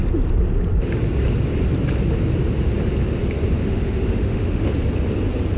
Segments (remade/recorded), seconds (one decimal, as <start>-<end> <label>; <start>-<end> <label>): 0.0-3.6 recorded; 3.6-4.7 remade; 4.7-5.6 recorded